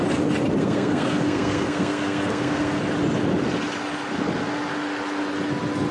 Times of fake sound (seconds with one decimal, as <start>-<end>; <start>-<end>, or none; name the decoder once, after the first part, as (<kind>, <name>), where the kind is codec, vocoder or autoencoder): 0.6-2.8 (codec, SNAC)